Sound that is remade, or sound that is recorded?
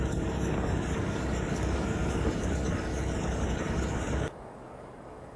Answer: remade